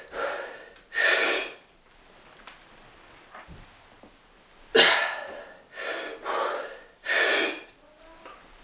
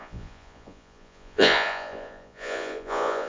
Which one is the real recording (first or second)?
first